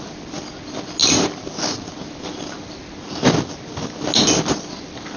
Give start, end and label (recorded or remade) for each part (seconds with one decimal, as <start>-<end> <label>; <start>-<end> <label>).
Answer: 0.0-5.2 recorded